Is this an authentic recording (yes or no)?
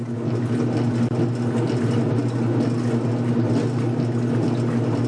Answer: yes